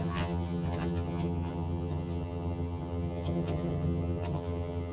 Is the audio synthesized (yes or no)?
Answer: yes